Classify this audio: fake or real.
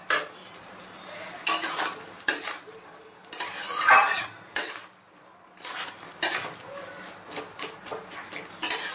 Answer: real